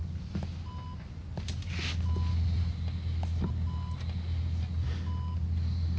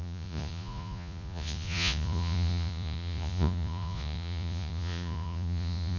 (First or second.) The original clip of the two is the first